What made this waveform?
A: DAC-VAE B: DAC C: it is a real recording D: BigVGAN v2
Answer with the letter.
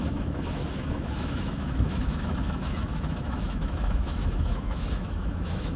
A